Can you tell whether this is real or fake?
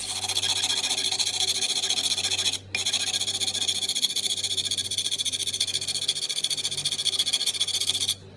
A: real